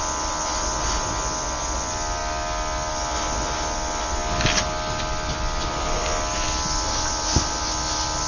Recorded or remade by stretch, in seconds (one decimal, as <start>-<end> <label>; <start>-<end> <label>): 0.0-8.3 recorded

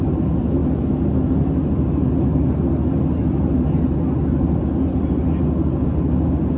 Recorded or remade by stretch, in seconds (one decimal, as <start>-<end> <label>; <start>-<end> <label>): 0.0-6.6 recorded

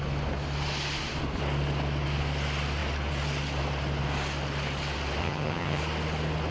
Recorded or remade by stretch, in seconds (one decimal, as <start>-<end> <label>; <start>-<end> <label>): 0.0-5.2 recorded; 5.2-5.8 remade; 5.8-6.5 recorded

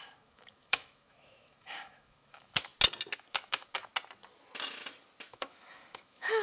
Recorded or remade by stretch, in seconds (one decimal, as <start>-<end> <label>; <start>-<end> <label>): 0.0-2.7 remade; 2.7-3.3 recorded; 3.3-3.9 remade; 3.9-5.3 recorded; 5.3-6.4 remade

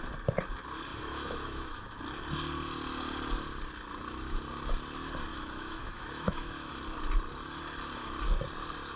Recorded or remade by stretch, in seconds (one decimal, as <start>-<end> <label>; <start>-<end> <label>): 0.0-0.9 recorded; 0.9-2.0 remade; 2.0-5.3 recorded; 5.3-6.7 remade; 6.7-9.0 recorded

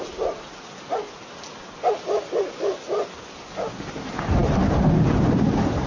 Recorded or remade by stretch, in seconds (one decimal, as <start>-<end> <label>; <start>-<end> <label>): 0.0-5.9 recorded

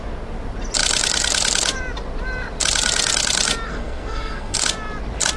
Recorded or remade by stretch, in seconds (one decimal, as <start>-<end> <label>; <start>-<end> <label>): 0.0-3.7 recorded; 3.7-4.6 remade; 4.6-5.4 recorded

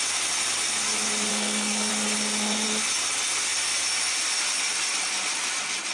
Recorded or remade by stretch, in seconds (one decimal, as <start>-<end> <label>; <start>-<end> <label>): 0.0-1.3 recorded; 1.3-1.9 remade; 1.9-5.9 recorded